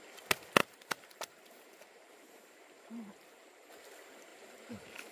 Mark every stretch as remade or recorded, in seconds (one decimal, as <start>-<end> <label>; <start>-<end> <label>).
0.0-0.6 recorded; 0.6-3.7 remade; 3.7-4.3 recorded; 4.3-5.1 remade